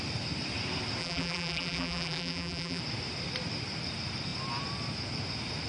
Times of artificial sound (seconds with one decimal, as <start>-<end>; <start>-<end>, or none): 1.0-2.8